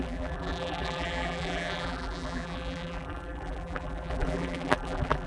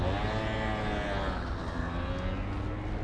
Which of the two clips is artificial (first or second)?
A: first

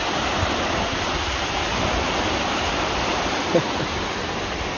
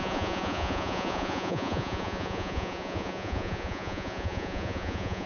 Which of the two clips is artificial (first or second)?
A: second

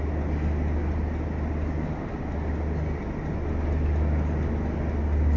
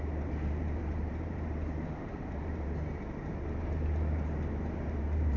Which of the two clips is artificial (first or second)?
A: second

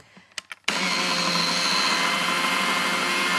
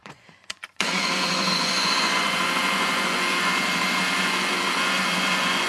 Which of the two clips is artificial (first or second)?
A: second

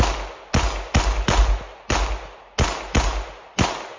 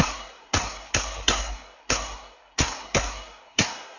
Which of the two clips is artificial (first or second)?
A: second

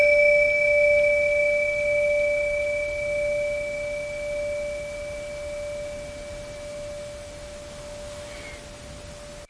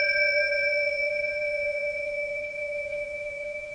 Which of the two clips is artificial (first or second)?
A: second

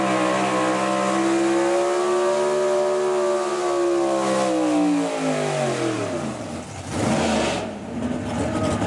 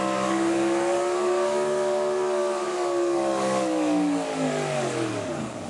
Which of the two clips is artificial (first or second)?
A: second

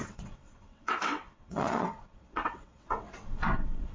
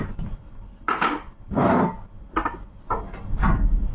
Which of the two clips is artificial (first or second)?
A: first